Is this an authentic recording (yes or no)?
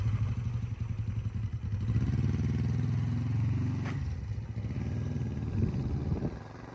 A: yes